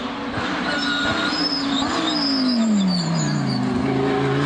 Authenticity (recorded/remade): recorded